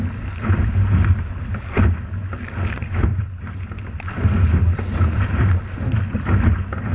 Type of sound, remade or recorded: recorded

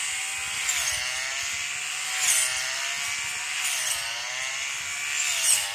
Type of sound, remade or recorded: recorded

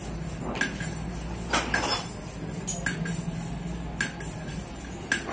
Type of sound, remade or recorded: recorded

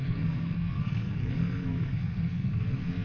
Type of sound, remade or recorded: remade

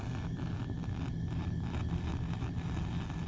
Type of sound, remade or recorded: recorded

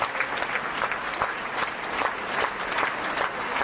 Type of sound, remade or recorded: recorded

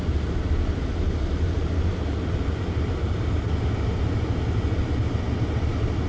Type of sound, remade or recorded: recorded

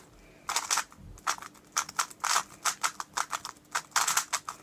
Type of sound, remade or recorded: recorded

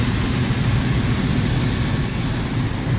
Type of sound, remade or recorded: recorded